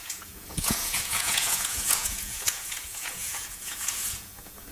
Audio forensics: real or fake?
fake